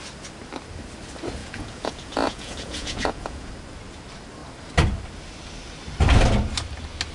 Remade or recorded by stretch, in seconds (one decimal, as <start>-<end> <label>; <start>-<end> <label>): 0.0-1.4 recorded; 1.4-3.5 remade; 3.5-7.1 recorded